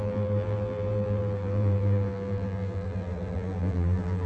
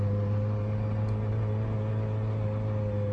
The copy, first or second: first